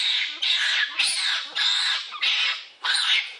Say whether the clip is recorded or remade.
recorded